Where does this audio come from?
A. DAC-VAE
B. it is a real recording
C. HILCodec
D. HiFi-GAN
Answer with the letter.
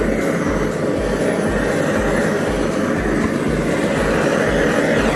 B